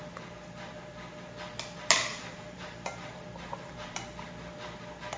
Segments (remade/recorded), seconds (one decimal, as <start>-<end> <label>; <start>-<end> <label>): 0.0-2.1 recorded; 2.1-3.2 remade; 3.2-5.2 recorded